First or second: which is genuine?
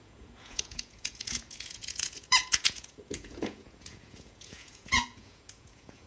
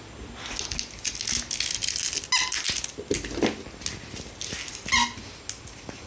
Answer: second